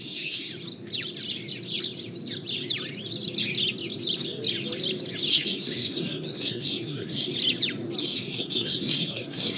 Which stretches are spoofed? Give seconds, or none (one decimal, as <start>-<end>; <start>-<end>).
0.0-0.5; 5.3-7.3; 8.0-9.6